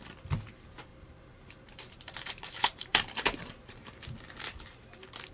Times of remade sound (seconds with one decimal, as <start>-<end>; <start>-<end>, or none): 0.9-4.1